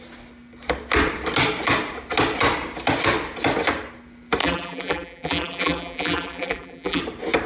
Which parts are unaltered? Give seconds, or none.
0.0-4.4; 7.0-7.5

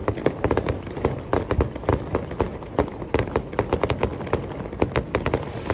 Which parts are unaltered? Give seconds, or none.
1.3-2.5; 3.5-5.7

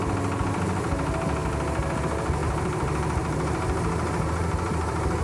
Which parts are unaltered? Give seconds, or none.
0.0-1.4; 2.0-2.4

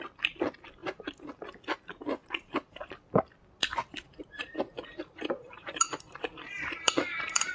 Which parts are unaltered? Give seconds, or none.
0.0-0.8; 1.3-2.2; 3.2-3.7

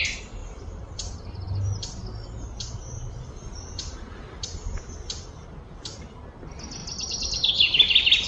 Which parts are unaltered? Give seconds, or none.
0.0-6.8; 7.5-8.3

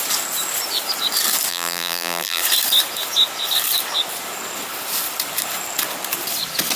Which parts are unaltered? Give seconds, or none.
0.0-1.5; 2.4-6.8

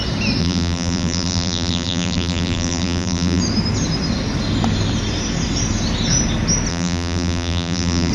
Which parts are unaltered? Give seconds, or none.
0.0-0.4; 3.4-6.7

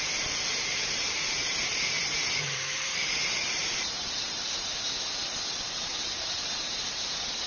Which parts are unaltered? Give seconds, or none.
4.7-5.5